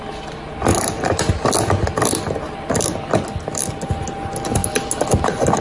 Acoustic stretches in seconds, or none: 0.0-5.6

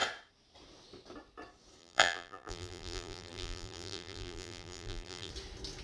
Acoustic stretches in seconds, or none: 0.0-1.8; 5.3-5.8

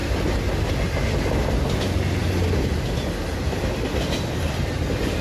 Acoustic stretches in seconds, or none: 0.0-5.2

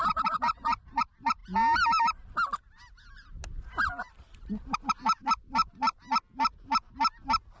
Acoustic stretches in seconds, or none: 1.4-3.6; 5.6-7.6